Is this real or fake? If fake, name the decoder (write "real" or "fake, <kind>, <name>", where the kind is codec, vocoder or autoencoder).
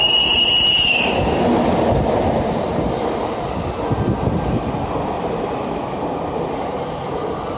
real